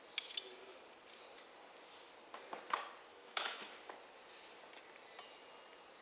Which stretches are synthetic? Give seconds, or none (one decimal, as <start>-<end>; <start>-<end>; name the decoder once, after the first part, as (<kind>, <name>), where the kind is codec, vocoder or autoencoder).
3.1-3.7 (autoencoder, DAC-VAE)